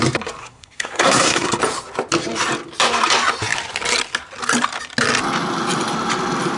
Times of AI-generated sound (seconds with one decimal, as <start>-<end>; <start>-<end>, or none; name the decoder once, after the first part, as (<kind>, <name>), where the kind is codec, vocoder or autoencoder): 0.4-1.6 (codec, SNAC)